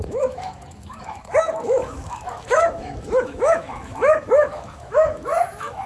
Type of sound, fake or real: fake